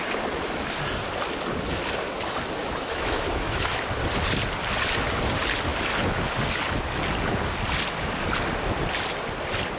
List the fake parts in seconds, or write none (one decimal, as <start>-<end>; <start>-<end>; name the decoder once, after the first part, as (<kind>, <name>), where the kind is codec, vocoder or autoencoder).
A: 2.6-3.7 (autoencoder, DAC-VAE)